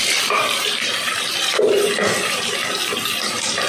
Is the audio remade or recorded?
remade